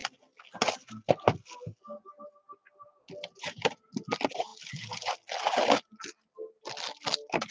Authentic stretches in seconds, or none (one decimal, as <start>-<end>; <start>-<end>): 0.0-7.5